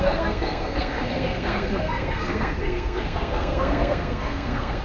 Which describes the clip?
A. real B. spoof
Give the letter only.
B